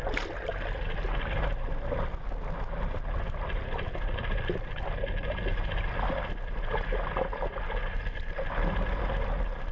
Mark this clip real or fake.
real